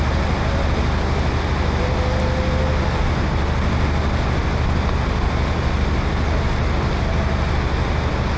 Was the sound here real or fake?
real